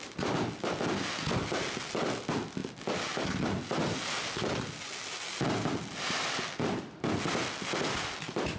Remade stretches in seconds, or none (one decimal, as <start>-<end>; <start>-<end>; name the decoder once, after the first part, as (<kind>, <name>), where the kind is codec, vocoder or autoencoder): 2.6-3.7 (vocoder, BigVGAN v2)